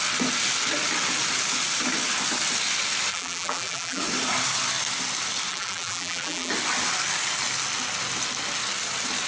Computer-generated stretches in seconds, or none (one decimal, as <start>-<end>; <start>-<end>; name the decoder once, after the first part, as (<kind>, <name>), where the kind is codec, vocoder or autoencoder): 3.1-4.0 (vocoder, BigVGAN v2); 5.5-6.5